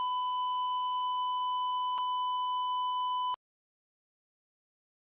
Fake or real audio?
real